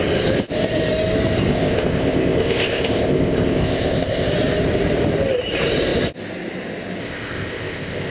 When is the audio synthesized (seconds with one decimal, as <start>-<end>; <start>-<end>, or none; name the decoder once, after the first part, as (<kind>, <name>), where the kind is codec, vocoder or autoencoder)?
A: 1.5-4.3 (codec, ZipCodec); 7.0-8.1